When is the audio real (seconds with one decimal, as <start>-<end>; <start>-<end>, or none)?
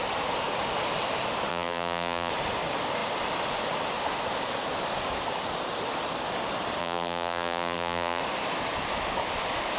0.0-1.5; 2.3-6.8; 8.2-9.8